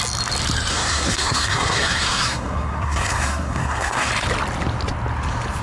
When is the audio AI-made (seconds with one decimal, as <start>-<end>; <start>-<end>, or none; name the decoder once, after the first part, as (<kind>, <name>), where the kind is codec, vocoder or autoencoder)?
0.7-4.1 (codec, SNAC)